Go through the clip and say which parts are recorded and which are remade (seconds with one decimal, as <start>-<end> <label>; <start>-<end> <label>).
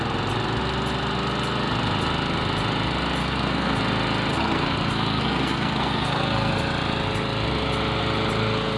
0.0-3.2 recorded; 3.2-3.8 remade; 3.8-4.3 recorded; 4.3-6.5 remade; 6.5-8.8 recorded